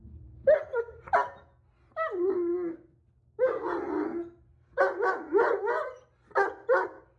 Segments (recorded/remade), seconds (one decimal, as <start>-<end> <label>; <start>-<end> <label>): 0.0-7.2 recorded